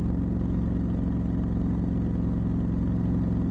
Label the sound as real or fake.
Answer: real